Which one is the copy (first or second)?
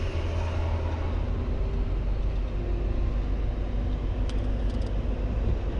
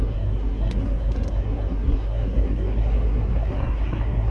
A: second